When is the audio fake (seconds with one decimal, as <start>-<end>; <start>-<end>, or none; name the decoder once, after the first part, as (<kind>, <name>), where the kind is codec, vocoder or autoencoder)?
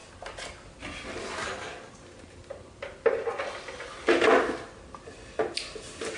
none